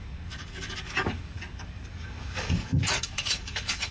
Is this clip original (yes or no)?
no